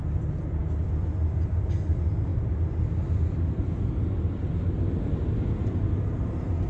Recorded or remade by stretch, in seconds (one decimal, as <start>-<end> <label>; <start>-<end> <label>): 0.0-6.7 recorded